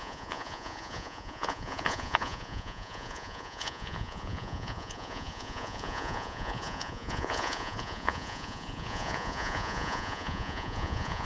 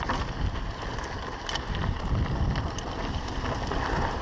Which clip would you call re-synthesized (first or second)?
first